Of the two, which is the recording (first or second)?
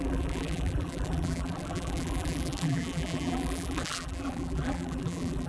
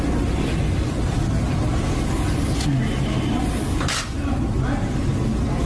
second